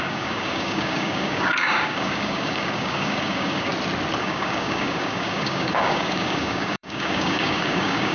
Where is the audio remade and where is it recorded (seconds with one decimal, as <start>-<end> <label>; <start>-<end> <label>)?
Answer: 0.0-3.7 remade; 3.7-4.2 recorded; 4.2-8.1 remade